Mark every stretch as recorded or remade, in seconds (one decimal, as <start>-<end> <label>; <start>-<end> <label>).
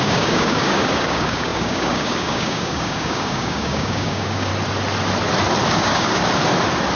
0.0-4.5 remade; 4.5-5.7 recorded; 5.7-6.2 remade; 6.2-7.0 recorded